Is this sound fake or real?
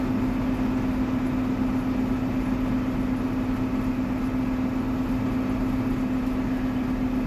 real